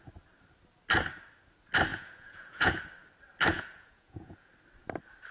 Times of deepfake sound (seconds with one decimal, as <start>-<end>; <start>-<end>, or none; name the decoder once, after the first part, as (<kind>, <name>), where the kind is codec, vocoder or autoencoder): 1.9-2.7 (vocoder, Vocos); 3.5-4.5